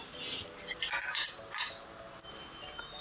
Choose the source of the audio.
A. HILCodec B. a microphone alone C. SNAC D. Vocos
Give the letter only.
B